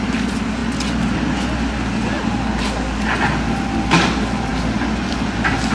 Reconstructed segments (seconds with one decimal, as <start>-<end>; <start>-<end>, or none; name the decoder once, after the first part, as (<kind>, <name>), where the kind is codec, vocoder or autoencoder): none